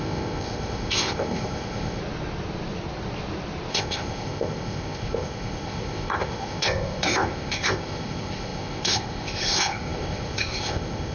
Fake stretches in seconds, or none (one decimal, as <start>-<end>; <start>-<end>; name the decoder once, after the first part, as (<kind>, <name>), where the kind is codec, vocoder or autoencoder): 0.0-2.0 (codec, ZipCodec); 3.7-11.1